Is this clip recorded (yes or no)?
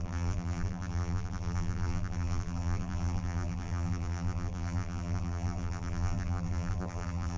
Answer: no